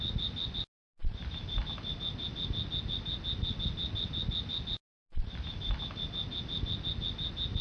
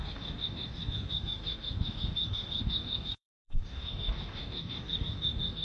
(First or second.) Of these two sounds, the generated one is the second